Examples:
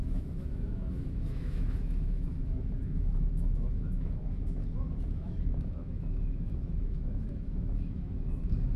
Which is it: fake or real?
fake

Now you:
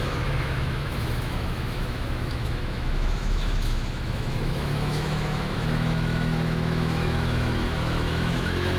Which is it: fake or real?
fake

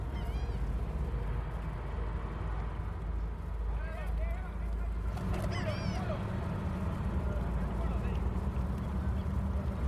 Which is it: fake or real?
real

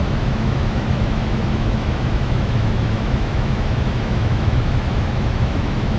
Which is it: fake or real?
fake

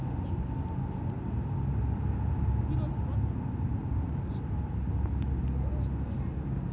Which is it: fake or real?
real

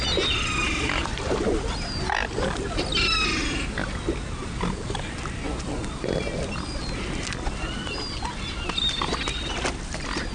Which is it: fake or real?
real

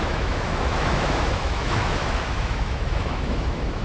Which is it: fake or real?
fake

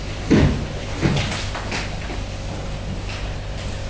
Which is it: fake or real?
real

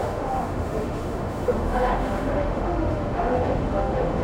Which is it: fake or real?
fake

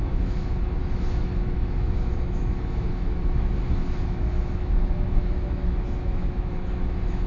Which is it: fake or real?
fake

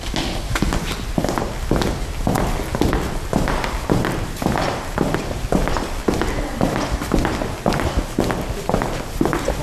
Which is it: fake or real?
real